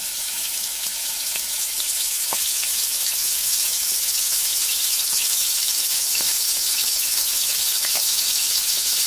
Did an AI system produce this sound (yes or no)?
yes